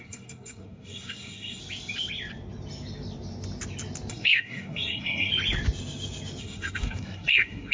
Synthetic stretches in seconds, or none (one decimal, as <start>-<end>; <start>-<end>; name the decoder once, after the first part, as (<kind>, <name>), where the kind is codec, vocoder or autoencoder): 0.0-1.6 (codec, SNAC); 4.1-5.3; 6.4-7.7